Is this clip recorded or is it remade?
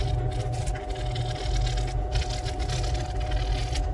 recorded